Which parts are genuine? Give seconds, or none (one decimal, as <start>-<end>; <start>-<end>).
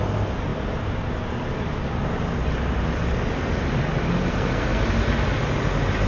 0.0-4.3; 4.8-6.1